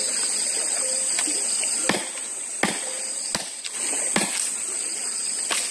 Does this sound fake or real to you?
real